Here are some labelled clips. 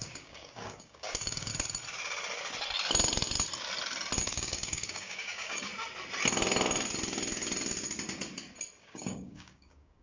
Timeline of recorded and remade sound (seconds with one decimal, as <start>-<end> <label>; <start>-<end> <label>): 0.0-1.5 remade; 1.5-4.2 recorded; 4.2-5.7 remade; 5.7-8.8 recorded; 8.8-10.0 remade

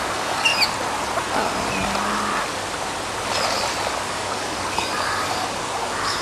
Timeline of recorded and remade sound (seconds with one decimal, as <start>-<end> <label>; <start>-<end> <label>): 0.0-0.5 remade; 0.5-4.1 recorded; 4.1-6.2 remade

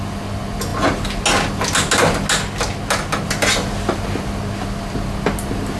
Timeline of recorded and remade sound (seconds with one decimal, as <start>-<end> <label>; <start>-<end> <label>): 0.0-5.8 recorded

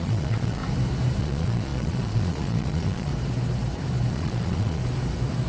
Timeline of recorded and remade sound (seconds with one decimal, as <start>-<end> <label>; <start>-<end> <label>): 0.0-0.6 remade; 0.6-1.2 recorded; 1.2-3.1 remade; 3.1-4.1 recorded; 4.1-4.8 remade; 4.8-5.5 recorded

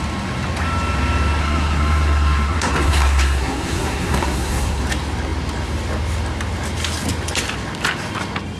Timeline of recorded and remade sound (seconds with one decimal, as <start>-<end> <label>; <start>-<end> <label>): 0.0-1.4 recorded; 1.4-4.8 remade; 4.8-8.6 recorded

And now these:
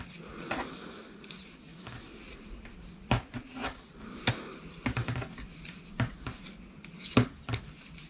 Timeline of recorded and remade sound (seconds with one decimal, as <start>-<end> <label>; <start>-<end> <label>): 0.0-1.7 recorded; 1.7-2.2 remade; 2.2-8.1 recorded

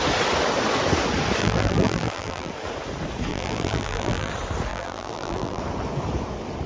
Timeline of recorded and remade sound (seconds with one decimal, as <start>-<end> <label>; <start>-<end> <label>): 0.0-1.4 recorded; 1.4-2.5 remade; 2.5-3.3 recorded; 3.3-4.3 remade; 4.3-4.7 recorded; 4.7-5.6 remade; 5.6-6.7 recorded